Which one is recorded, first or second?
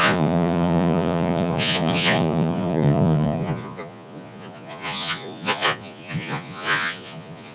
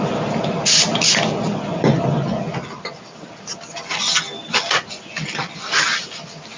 second